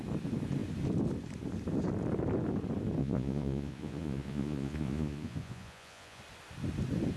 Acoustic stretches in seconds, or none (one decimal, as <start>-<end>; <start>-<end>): 0.0-3.0; 6.2-7.2